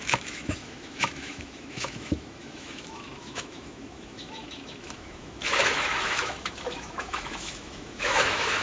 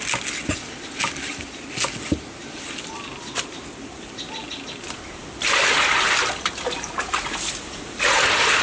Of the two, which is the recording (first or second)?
second